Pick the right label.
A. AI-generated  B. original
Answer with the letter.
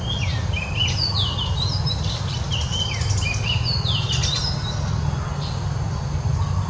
B